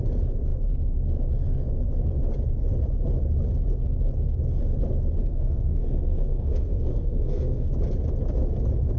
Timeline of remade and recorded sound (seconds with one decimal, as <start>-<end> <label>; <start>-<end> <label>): 0.0-5.2 recorded; 5.2-7.7 remade; 7.7-9.0 recorded